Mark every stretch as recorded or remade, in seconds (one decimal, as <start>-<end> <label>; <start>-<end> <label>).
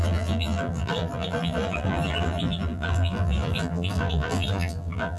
0.0-5.2 remade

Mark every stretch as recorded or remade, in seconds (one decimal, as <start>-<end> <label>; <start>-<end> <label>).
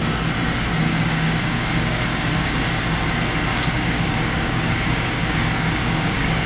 0.0-0.9 recorded; 0.9-2.8 remade; 2.8-3.5 recorded; 3.5-6.5 remade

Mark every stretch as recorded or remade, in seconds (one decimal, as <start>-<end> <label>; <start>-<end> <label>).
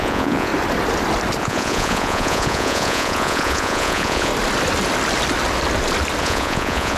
0.0-0.5 remade; 0.5-1.4 recorded; 1.4-4.3 remade; 4.3-6.2 recorded; 6.2-7.0 remade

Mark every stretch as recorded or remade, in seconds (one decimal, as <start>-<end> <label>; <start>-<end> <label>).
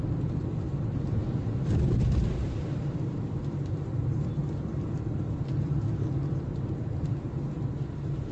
0.0-8.3 recorded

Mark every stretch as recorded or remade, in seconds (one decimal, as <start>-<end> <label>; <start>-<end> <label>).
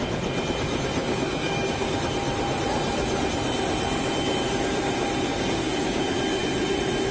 0.0-1.0 recorded; 1.0-2.0 remade; 2.0-5.3 recorded; 5.3-6.0 remade; 6.0-7.1 recorded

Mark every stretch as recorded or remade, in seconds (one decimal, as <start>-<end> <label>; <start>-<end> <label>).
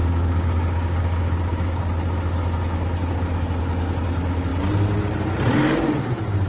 0.0-1.8 remade; 1.8-6.5 recorded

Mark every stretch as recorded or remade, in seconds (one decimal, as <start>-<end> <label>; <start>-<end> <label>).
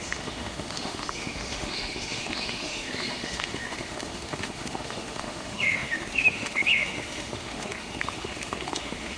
0.0-9.2 remade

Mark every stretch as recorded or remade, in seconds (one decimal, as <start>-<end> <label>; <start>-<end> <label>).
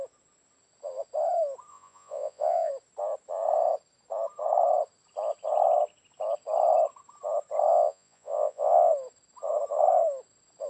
0.0-1.7 recorded; 1.7-2.7 remade; 2.7-7.7 recorded; 7.7-8.9 remade; 8.9-10.7 recorded